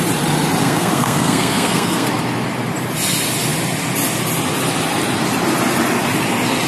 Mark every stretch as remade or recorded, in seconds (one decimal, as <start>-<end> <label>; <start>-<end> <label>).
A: 0.0-0.6 recorded; 0.6-2.1 remade; 2.1-6.7 recorded